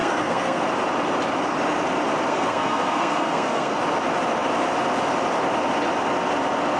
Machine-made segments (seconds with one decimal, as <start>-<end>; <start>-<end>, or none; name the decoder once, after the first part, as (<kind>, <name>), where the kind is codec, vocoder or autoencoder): 0.0-0.6 (codec, SNAC); 2.3-3.8